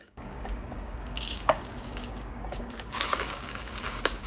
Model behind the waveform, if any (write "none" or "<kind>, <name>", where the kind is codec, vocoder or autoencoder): codec, DAC